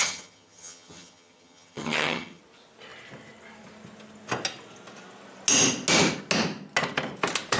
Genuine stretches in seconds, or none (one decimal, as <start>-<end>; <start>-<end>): 2.4-7.6